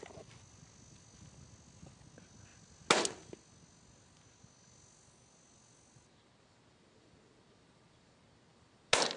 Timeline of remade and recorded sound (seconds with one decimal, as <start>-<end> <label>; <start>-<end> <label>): 0.0-9.2 recorded